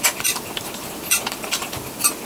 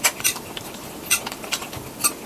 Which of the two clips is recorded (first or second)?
first